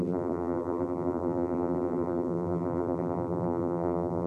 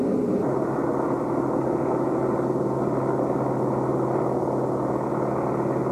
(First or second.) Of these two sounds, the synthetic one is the first